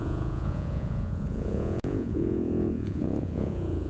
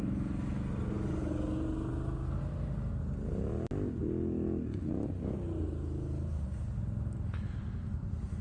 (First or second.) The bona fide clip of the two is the second